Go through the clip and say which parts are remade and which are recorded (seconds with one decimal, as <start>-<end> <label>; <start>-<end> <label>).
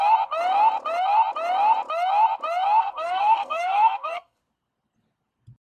0.0-2.8 recorded; 2.8-4.4 remade; 4.4-5.8 recorded